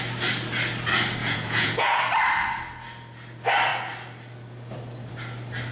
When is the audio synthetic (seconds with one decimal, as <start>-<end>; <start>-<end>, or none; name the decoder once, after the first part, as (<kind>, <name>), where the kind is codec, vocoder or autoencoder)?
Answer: 1.2-2.0 (vocoder, Vocos)